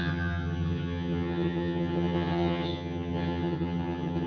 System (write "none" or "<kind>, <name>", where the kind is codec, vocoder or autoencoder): vocoder, HiFi-GAN